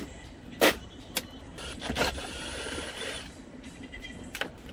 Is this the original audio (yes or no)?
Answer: no